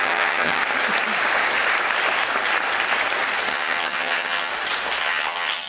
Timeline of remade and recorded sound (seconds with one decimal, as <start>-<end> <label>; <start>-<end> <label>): 0.0-0.6 remade; 0.6-3.5 recorded; 3.5-4.5 remade; 4.5-5.0 recorded; 5.0-5.7 remade